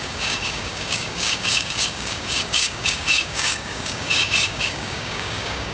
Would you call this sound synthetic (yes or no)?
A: yes